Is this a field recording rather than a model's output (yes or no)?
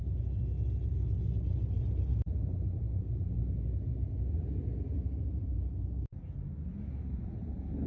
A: yes